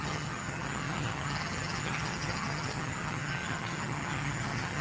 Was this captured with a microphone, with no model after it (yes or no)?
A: no